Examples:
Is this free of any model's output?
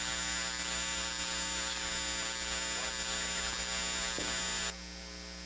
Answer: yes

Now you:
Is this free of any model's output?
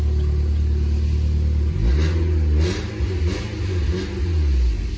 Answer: yes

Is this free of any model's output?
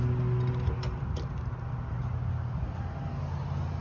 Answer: yes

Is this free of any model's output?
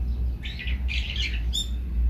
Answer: yes